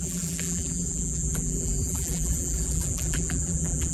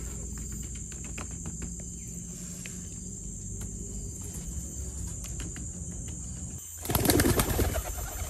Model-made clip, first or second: first